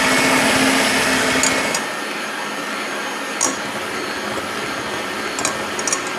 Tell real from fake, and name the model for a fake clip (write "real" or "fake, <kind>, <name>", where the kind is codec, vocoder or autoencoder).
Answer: real